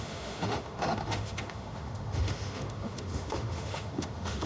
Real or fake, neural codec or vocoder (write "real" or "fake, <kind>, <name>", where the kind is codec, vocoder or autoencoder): fake, autoencoder, DAC-VAE